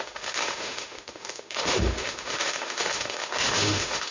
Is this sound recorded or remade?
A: remade